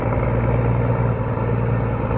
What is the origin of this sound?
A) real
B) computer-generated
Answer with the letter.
A